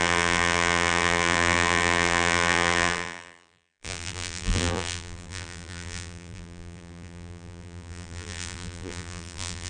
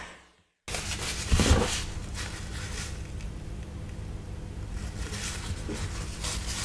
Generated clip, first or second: first